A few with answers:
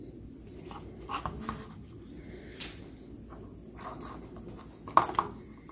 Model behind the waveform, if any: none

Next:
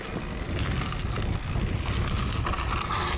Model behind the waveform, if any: none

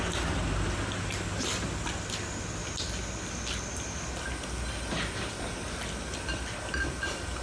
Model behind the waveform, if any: none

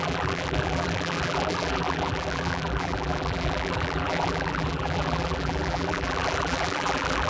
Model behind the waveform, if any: vocoder, BigVGAN v2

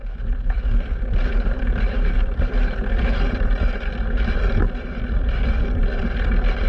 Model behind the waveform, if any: vocoder, BigVGAN v2